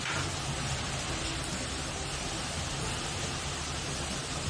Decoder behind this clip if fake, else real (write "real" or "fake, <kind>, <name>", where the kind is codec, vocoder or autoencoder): real